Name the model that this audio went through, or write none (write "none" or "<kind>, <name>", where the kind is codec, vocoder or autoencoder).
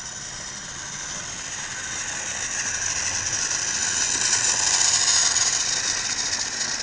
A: vocoder, BigVGAN v2